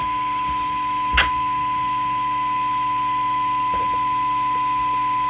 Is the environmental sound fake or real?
real